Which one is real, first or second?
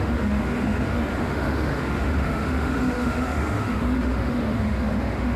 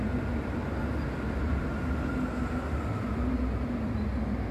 second